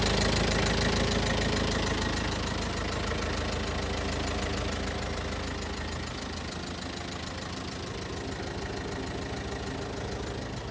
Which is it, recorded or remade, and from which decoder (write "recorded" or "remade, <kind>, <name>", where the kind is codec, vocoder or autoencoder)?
recorded